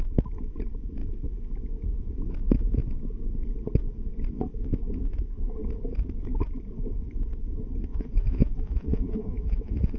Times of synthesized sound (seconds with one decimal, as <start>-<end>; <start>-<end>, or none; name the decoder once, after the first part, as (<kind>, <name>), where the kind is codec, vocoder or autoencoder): 7.9-10.0 (vocoder, Vocos)